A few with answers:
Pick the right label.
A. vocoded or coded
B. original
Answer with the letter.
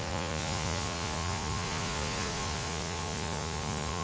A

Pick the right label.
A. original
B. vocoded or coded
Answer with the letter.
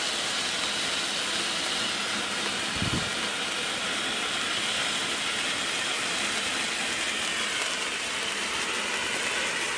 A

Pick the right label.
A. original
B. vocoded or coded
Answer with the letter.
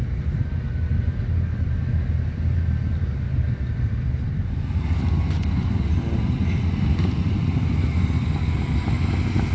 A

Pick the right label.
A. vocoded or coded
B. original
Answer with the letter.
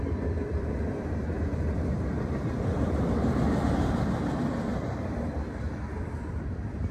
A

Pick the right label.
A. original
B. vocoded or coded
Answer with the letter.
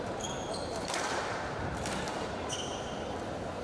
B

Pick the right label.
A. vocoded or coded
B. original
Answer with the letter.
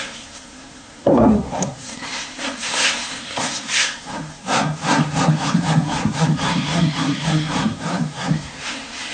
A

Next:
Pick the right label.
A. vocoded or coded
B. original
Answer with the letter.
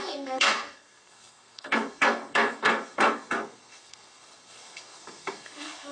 A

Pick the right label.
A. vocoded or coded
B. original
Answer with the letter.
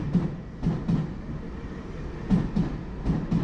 B